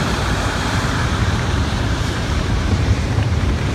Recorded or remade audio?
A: remade